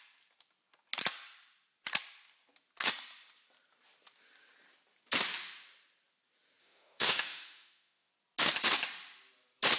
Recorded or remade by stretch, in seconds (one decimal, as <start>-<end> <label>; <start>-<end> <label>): 0.0-6.6 recorded; 6.6-8.1 remade; 8.1-9.8 recorded